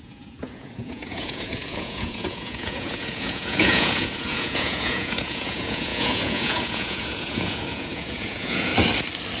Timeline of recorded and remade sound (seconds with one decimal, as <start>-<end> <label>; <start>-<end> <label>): 0.0-8.7 remade; 8.7-9.4 recorded